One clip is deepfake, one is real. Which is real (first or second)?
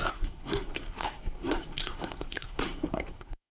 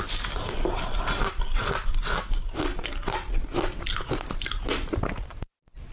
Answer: second